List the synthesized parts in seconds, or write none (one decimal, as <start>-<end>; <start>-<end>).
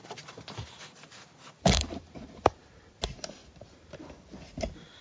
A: 0.0-3.0; 3.4-4.0